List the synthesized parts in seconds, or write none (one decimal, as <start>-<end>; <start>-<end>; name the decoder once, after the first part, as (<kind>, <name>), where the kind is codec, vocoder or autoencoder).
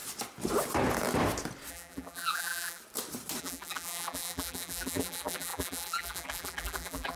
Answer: 1.7-2.8 (vocoder, BigVGAN v2); 3.4-7.2